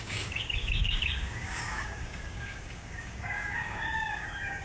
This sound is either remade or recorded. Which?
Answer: remade